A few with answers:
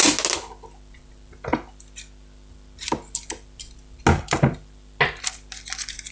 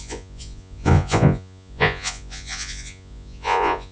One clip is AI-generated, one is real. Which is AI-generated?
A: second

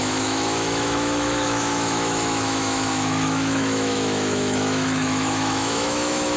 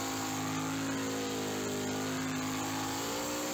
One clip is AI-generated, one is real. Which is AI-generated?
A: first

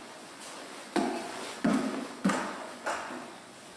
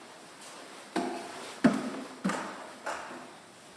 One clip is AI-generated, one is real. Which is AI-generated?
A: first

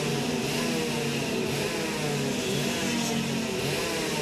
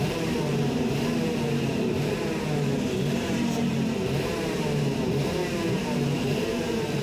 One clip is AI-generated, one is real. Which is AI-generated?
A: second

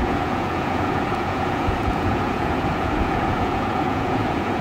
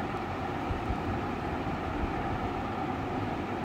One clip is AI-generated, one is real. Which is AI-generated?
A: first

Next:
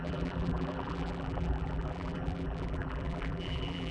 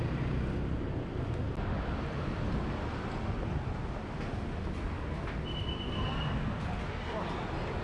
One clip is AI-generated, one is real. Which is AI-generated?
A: first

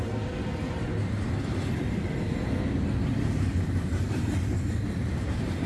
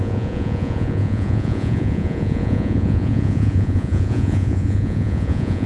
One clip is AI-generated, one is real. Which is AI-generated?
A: second